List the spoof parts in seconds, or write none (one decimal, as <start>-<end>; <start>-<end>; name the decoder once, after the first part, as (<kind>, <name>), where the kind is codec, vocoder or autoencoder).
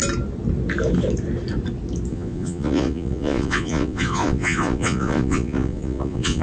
2.1-6.4 (vocoder, Vocos)